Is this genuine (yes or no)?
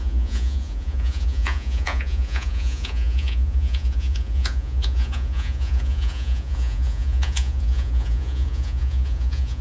no